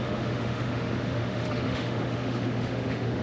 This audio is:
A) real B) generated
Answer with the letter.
B